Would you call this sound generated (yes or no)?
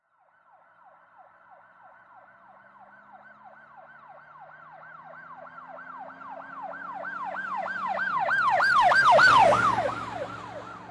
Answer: no